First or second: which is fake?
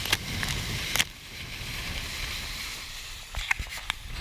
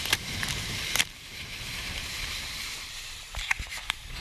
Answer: second